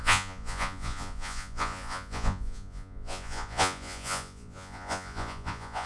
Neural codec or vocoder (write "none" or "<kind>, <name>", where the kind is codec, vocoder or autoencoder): vocoder, Vocos